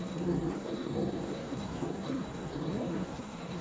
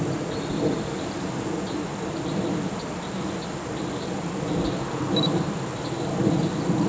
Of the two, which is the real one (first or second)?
second